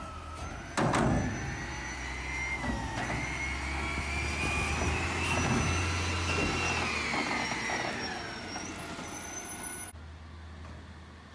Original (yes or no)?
yes